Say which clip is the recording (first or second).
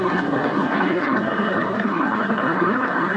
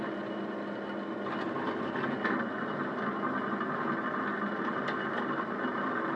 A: second